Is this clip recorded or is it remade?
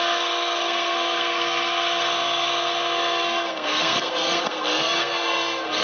remade